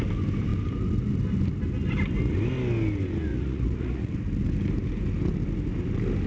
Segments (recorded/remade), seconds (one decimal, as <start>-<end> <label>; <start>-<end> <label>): 0.0-3.3 recorded; 3.3-4.1 remade; 4.1-6.3 recorded